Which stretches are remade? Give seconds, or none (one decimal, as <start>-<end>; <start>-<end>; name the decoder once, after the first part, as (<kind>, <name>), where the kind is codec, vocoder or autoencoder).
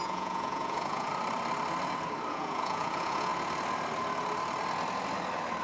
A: 0.0-1.1 (vocoder, Vocos); 2.3-3.3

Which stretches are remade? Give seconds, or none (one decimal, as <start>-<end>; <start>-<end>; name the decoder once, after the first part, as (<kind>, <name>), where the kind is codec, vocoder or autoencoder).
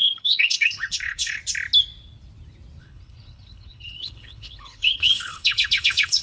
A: 0.0-1.4 (codec, HILCodec); 2.8-6.2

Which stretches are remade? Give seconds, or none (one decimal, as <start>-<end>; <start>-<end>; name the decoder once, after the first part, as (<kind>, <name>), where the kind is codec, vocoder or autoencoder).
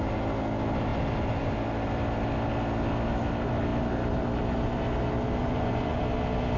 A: 5.4-6.0 (vocoder, Vocos)